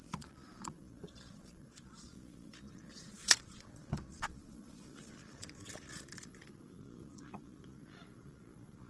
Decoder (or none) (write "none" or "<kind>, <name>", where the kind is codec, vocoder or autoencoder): vocoder, Vocos